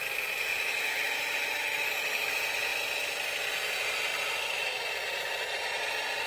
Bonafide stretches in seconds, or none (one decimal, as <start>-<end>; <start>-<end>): 0.0-0.5; 2.3-6.3